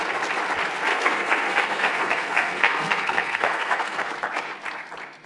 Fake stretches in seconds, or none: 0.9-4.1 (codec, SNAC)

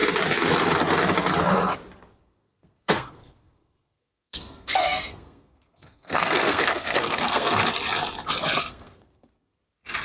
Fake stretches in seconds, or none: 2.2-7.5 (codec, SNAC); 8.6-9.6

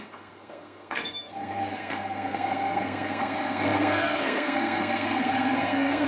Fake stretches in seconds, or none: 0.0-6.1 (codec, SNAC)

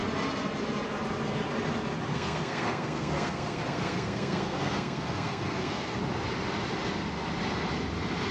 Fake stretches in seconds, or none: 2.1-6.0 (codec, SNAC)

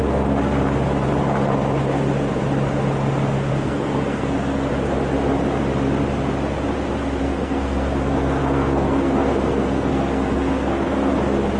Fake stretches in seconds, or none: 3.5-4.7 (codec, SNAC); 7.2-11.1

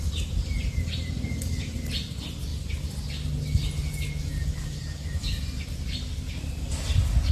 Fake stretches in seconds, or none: none

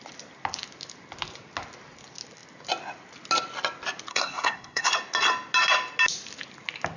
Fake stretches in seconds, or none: 4.1-4.9 (codec, SNAC)

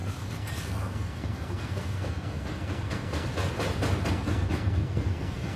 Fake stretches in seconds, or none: 0.0-3.3 (codec, SNAC); 4.1-5.6